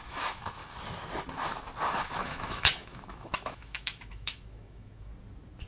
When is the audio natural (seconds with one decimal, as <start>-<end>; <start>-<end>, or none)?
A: 0.6-2.0; 5.1-5.7